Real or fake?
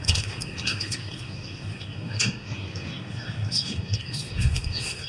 fake